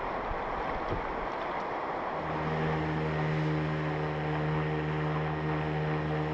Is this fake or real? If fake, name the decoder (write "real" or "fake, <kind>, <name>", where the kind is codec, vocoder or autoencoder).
real